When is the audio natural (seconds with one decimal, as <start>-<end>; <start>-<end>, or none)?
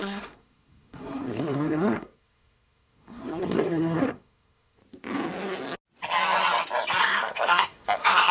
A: 4.8-7.0